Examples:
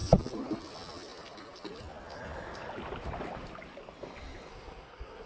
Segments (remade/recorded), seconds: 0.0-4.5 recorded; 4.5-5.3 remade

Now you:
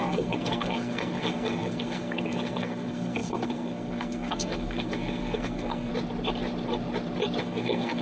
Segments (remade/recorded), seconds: 0.0-5.9 remade; 5.9-7.4 recorded; 7.4-8.0 remade

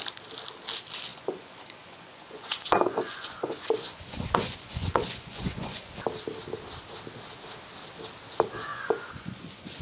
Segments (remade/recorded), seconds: 0.0-1.1 recorded; 1.1-5.9 remade; 5.9-8.7 recorded; 8.7-9.8 remade